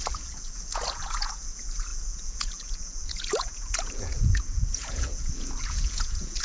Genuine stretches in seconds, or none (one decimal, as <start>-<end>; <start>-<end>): none